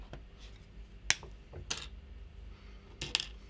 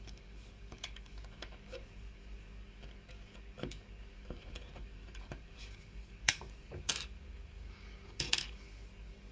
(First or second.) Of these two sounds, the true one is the first